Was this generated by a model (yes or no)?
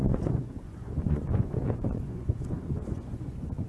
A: yes